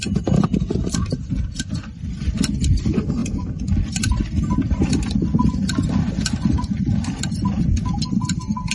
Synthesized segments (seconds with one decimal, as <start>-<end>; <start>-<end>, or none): none